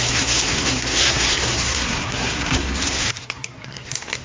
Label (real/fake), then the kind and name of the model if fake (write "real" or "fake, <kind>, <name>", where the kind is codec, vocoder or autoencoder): fake, codec, SNAC